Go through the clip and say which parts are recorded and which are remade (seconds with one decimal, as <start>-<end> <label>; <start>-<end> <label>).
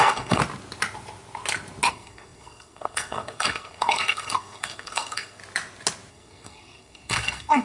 0.0-0.4 remade; 0.4-1.9 recorded; 1.9-5.4 remade; 5.4-6.1 recorded; 6.1-7.6 remade